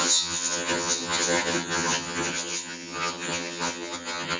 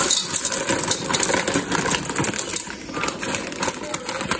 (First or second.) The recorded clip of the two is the second